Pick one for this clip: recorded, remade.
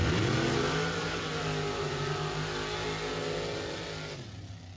recorded